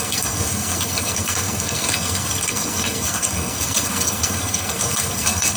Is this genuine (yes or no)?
no